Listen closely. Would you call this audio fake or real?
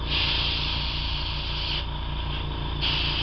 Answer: real